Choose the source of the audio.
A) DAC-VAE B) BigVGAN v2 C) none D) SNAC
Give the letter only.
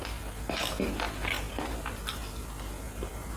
C